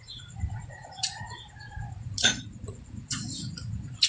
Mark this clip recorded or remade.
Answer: remade